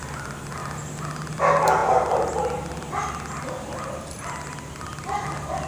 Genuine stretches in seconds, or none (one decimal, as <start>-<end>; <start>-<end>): 0.0-5.7